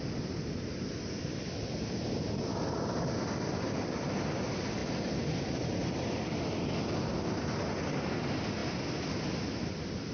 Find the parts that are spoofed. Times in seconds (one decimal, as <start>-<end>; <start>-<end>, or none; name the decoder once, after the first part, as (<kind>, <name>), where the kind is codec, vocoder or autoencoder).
none